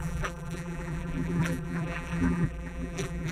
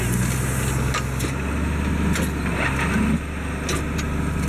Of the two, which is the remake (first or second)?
first